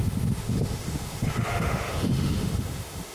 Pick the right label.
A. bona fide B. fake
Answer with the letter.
B